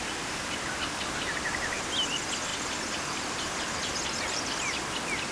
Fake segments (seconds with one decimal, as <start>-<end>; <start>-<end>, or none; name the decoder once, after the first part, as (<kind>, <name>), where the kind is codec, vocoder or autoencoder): none